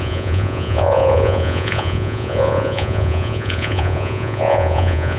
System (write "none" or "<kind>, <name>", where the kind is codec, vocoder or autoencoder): vocoder, Vocos